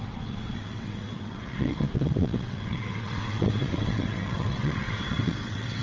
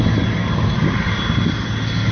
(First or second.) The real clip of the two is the second